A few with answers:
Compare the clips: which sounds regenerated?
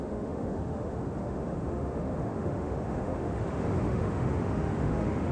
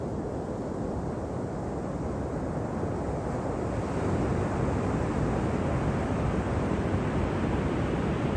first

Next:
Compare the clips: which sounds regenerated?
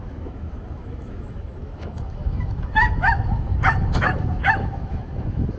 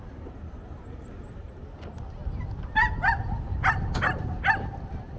first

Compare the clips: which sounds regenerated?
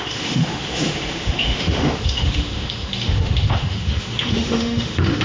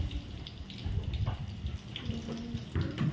first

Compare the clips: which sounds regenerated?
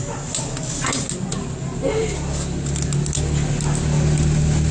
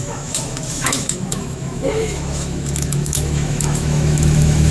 second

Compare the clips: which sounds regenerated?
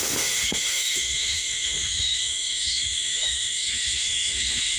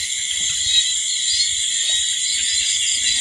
first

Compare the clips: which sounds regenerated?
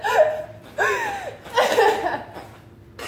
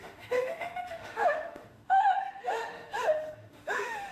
second